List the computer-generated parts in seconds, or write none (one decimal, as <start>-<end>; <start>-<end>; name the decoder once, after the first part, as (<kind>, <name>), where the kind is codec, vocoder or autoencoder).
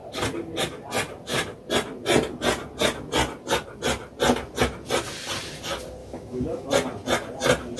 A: 6.0-6.7 (autoencoder, DAC-VAE)